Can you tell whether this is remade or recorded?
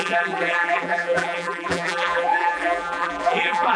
remade